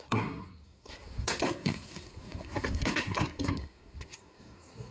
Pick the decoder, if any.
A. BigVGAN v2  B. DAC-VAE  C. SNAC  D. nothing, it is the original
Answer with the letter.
C